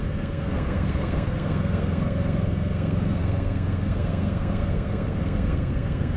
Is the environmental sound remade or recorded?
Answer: remade